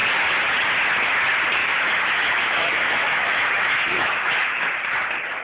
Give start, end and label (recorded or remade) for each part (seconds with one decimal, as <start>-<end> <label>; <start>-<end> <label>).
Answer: 0.0-1.6 recorded; 1.6-4.8 remade; 4.8-5.4 recorded